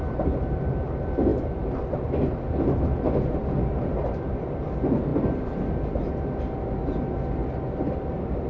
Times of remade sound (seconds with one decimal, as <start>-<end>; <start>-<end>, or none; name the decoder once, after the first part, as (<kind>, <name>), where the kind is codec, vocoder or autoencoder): none